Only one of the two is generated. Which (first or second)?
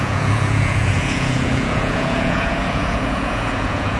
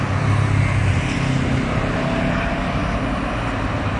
first